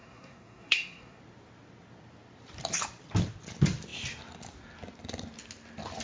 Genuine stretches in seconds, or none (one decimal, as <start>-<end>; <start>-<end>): 1.2-6.0